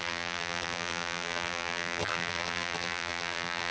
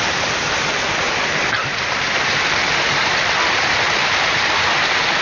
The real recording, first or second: second